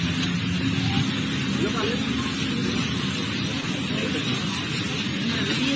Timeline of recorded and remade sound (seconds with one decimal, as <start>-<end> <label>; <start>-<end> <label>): 0.0-5.8 recorded